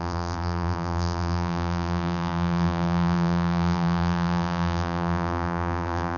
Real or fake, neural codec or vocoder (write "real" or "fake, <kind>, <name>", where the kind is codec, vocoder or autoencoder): fake, vocoder, BigVGAN v2